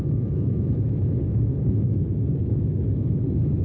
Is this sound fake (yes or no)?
yes